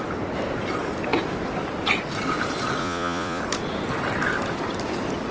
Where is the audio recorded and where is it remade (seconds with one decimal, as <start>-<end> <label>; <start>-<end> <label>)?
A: 0.0-2.8 recorded; 2.8-3.4 remade; 3.4-5.3 recorded